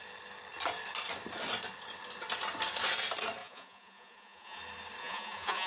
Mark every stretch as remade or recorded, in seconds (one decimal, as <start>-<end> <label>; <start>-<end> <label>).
0.0-3.4 recorded; 3.4-4.6 remade; 4.6-5.0 recorded; 5.0-5.7 remade